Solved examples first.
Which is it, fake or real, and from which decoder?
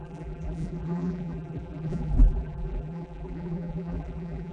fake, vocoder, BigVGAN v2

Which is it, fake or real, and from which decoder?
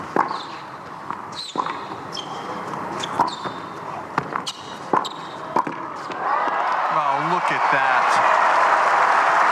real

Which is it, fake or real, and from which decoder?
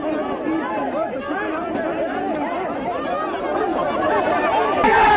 real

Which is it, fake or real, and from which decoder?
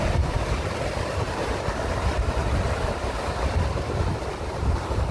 fake, vocoder, BigVGAN v2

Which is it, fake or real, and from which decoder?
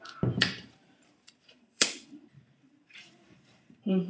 fake, vocoder, BigVGAN v2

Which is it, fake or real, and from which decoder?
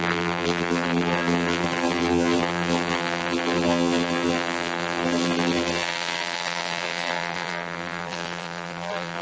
fake, vocoder, BigVGAN v2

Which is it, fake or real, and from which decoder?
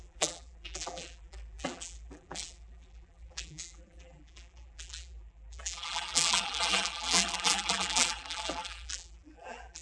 fake, vocoder, BigVGAN v2